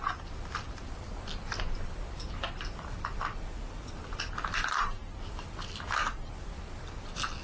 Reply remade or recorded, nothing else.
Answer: recorded